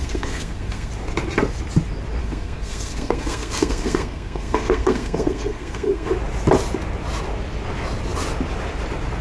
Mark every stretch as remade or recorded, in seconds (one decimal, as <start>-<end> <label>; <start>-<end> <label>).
0.0-0.9 remade; 0.9-2.2 recorded; 2.2-6.1 remade; 6.1-9.2 recorded